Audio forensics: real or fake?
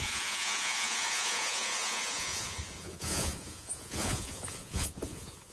fake